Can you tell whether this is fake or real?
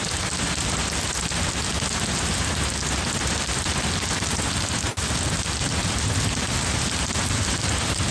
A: real